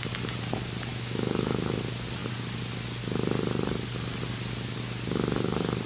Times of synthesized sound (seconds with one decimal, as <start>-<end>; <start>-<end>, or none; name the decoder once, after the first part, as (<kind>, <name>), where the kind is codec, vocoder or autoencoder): 0.9-1.8 (autoencoder, DAC-VAE)